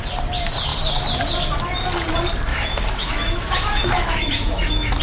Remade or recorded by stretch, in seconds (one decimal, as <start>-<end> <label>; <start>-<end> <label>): 0.0-2.5 recorded; 2.5-5.0 remade